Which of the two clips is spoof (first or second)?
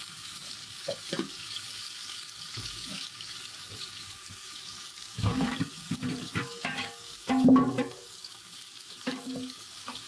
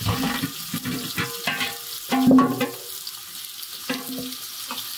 first